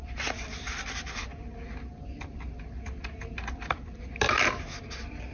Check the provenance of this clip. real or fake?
real